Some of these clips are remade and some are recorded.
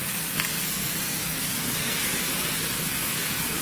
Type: remade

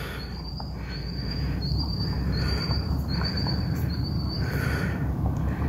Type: remade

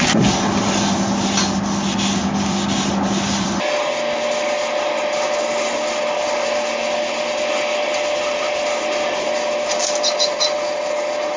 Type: recorded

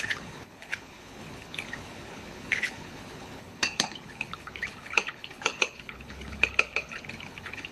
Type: remade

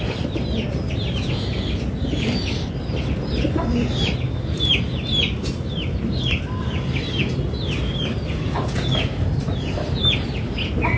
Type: recorded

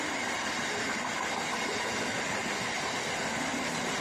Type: recorded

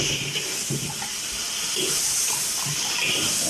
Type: recorded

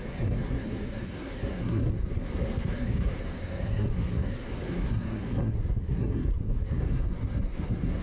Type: remade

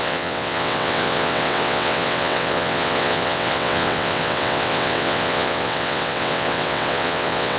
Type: remade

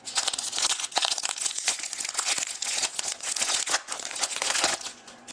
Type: remade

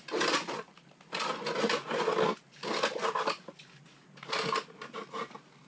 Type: recorded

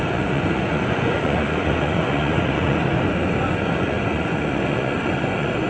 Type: remade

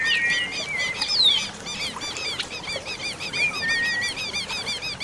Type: recorded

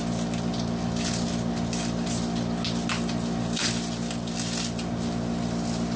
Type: recorded